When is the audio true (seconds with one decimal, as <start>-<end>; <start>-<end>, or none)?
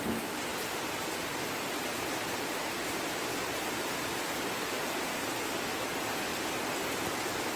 0.0-0.5; 5.1-7.6